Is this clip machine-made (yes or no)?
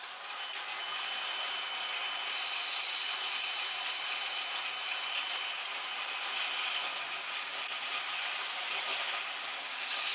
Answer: no